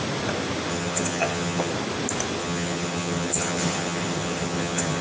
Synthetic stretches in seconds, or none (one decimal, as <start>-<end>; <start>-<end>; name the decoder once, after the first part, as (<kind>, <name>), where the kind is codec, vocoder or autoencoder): 0.7-1.7 (vocoder, HiFi-GAN); 2.4-5.0